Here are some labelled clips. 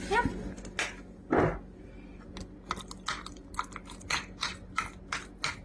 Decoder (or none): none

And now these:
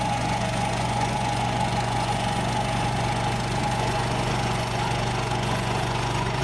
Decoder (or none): vocoder, Vocos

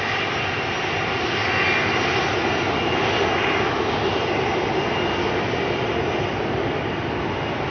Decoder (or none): none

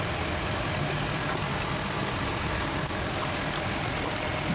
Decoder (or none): vocoder, BigVGAN v2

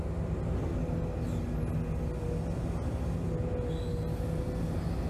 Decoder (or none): none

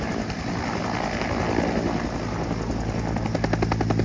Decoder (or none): none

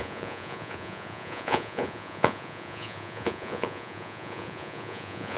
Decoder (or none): vocoder, Vocos